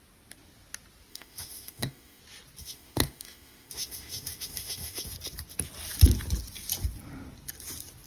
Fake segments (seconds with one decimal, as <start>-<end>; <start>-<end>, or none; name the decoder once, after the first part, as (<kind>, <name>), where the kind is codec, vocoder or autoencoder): 1.1-2.2 (autoencoder, DAC-VAE); 2.6-5.1